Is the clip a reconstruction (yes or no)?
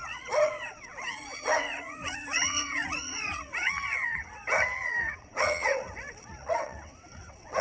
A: yes